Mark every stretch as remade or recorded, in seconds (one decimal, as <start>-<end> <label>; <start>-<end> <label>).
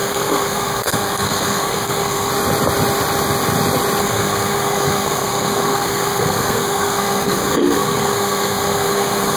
0.0-2.3 remade; 2.3-4.0 recorded; 4.0-9.4 remade